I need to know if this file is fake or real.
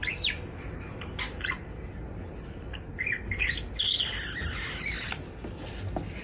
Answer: real